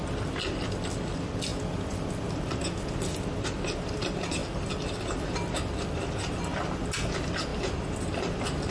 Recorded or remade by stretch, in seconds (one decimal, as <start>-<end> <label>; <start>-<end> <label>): 0.0-8.7 recorded